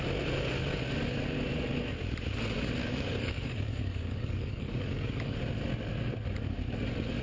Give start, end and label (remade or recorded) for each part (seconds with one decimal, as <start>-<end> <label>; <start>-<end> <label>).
0.0-2.8 recorded; 2.8-5.4 remade; 5.4-7.2 recorded

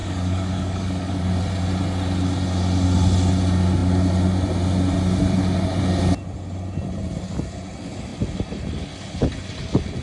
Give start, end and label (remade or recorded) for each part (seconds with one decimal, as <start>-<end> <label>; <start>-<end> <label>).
0.0-1.3 remade; 1.3-10.0 recorded

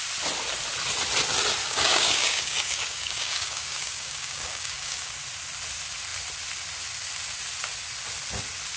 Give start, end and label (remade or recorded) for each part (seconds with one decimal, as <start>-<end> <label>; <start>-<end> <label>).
0.0-1.6 recorded; 1.6-5.1 remade; 5.1-8.8 recorded

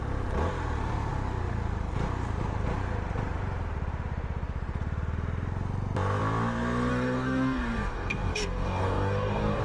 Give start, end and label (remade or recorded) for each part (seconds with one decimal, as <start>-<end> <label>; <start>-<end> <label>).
0.0-6.9 recorded; 6.9-9.6 remade